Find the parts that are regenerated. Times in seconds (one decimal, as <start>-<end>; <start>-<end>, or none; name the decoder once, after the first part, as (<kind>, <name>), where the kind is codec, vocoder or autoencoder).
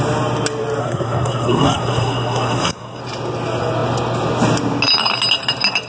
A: 0.8-3.0 (codec, SNAC)